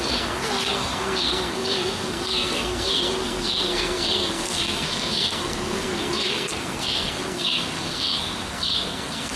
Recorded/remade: remade